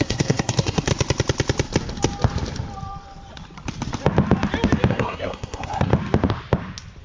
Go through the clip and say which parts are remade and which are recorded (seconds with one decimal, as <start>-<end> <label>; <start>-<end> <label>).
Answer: 0.0-0.9 remade; 0.9-4.9 recorded; 4.9-5.9 remade; 5.9-7.0 recorded